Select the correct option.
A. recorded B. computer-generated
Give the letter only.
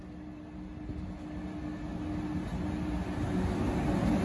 A